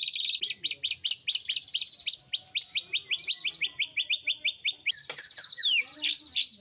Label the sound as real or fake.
real